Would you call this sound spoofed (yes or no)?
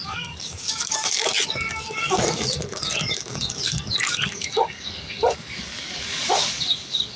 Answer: yes